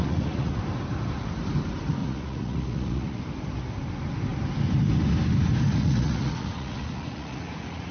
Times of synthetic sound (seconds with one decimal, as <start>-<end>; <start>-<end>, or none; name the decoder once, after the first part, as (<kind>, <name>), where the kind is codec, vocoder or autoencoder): 0.0-0.6 (vocoder, Vocos); 2.0-3.2; 5.7-7.9